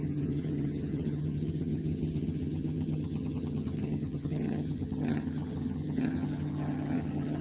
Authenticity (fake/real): fake